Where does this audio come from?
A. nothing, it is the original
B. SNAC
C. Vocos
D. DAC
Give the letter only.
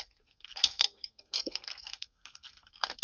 B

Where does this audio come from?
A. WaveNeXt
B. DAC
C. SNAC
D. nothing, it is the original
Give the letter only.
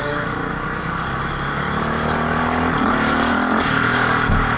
B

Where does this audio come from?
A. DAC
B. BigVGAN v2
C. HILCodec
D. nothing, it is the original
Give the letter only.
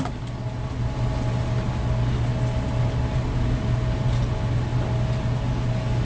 D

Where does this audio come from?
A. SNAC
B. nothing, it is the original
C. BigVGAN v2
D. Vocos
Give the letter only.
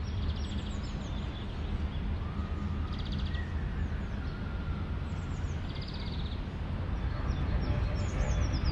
B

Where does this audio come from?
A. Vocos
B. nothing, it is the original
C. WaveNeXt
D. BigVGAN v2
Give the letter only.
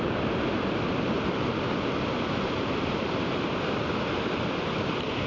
B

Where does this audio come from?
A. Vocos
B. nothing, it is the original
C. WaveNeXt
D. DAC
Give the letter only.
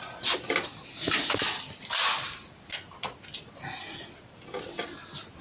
B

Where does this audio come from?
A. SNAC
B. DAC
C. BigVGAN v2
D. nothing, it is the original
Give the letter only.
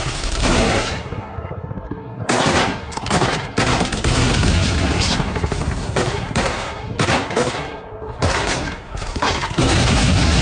A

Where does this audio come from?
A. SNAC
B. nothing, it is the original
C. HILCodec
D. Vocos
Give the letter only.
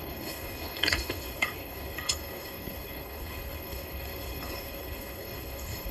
C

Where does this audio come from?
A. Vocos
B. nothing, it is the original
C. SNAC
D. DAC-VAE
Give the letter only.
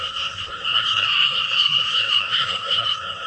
C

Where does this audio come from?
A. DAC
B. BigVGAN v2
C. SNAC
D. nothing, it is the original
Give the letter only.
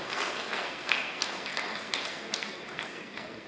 C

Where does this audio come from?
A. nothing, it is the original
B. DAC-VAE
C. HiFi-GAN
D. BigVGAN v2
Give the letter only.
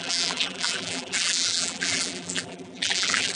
D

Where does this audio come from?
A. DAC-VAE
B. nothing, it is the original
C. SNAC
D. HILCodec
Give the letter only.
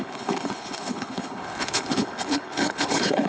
D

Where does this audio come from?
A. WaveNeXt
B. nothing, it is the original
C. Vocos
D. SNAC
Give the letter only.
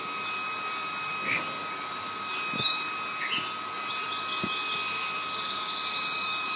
B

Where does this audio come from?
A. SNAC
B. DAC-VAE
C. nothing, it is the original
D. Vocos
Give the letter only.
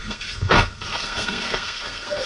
A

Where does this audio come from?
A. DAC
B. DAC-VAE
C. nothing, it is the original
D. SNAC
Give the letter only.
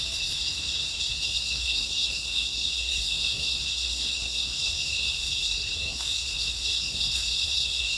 D